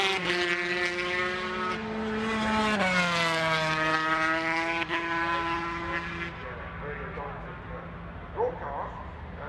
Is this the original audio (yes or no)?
yes